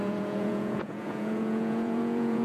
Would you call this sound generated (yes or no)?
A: yes